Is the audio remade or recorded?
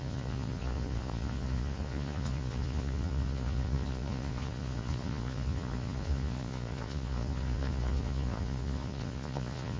remade